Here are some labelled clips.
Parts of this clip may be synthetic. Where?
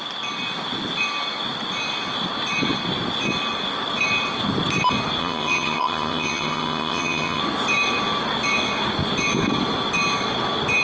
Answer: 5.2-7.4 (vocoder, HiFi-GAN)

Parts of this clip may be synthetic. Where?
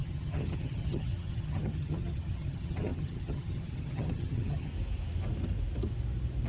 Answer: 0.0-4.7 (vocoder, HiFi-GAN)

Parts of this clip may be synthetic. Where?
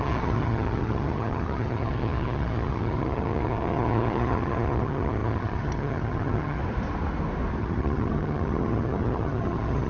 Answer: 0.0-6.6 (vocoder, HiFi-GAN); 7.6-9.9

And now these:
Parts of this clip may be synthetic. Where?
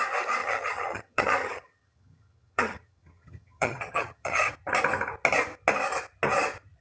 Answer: 0.4-4.5 (vocoder, HiFi-GAN)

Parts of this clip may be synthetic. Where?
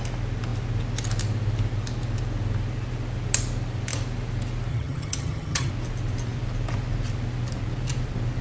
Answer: 4.7-5.7 (vocoder, HiFi-GAN)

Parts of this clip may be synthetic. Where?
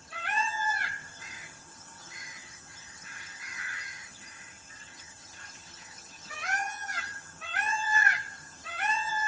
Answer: 0.0-9.3 (vocoder, HiFi-GAN)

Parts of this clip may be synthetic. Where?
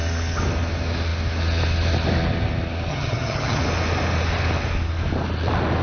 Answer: 2.9-3.6 (vocoder, HiFi-GAN)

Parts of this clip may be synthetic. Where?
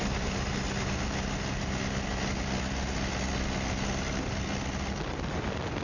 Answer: none